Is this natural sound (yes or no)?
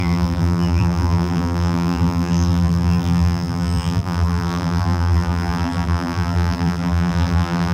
no